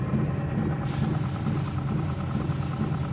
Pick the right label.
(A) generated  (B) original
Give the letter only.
B